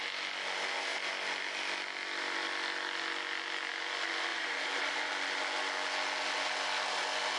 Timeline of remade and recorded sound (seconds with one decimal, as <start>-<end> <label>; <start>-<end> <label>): 0.0-4.3 recorded; 4.3-5.1 remade; 5.1-7.4 recorded